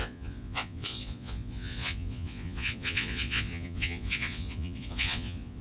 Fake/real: fake